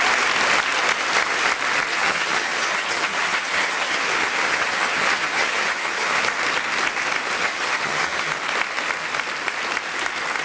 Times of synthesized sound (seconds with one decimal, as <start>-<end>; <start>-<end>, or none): 1.9-6.2; 7.4-8.3

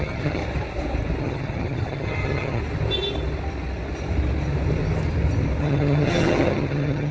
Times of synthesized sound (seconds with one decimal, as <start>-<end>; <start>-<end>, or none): 0.0-0.4; 1.2-2.6; 5.6-7.1

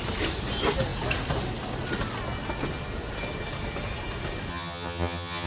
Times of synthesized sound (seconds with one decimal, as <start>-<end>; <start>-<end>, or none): 4.5-5.5

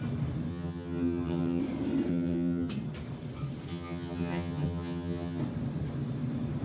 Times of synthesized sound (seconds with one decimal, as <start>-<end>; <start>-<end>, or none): 0.5-1.6; 2.1-2.7; 3.7-5.4

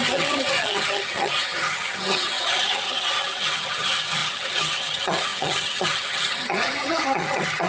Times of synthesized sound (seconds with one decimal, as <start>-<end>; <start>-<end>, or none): 0.0-7.7

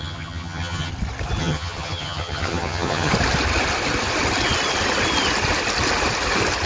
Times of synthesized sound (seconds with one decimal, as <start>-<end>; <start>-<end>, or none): 0.0-0.9; 1.4-3.1

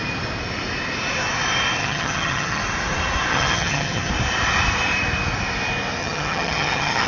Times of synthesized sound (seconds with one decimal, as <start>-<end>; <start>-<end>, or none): 1.8-2.6; 3.3-4.1; 6.0-7.1

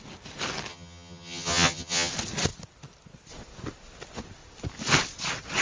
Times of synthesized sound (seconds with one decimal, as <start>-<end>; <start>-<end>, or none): 0.7-2.1